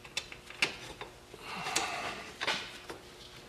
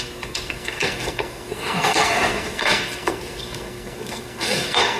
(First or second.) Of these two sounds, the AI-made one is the second